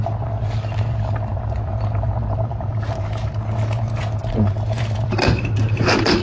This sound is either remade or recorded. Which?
remade